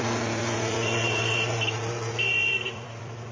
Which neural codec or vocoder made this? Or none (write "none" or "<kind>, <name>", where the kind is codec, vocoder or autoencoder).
vocoder, BigVGAN v2